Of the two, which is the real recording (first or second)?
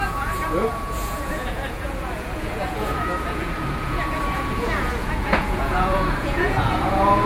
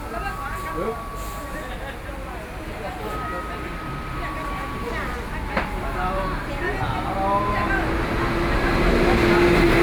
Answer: second